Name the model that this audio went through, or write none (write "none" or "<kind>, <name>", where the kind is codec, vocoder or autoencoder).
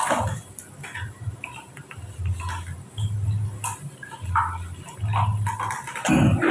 none